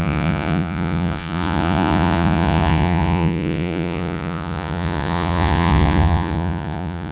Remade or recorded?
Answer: remade